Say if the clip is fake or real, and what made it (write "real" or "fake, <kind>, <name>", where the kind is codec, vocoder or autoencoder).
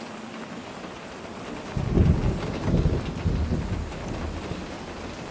real